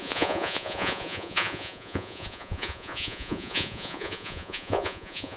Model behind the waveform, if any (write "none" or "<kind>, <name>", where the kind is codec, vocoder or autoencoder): vocoder, Vocos